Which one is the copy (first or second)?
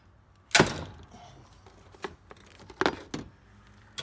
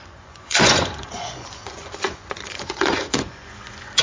second